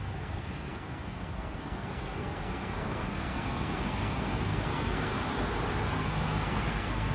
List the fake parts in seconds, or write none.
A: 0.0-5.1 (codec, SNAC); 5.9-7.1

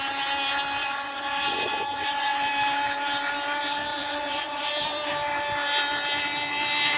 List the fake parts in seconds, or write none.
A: 0.8-2.5 (vocoder, Vocos); 3.9-4.7

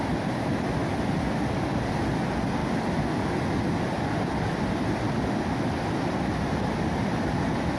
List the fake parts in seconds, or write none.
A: 0.8-1.8 (vocoder, BigVGAN v2); 2.6-7.3

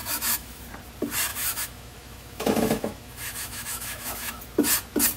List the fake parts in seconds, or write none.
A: 0.0-0.6 (autoencoder, DAC-VAE); 1.3-4.4

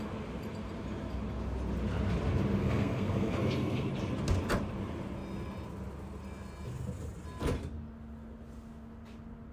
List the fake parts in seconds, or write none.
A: 2.6-3.9 (codec, SNAC)

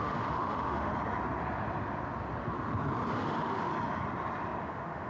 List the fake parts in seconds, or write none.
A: 0.0-0.9 (autoencoder, DAC-VAE); 3.1-3.7; 4.6-5.1

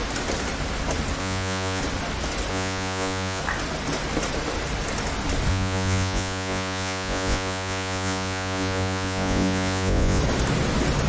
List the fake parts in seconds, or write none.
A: 1.2-1.8 (vocoder, Vocos); 2.5-3.4; 5.5-10.2

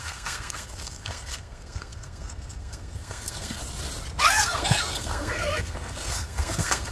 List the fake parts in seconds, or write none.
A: 0.0-3.6 (codec, SNAC); 4.2-6.9